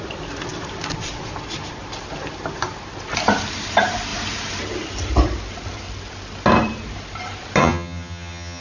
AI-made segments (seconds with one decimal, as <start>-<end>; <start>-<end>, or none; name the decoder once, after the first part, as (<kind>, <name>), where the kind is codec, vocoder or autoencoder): 7.6-8.6 (vocoder, HiFi-GAN)